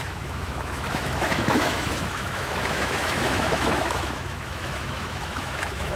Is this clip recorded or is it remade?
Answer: remade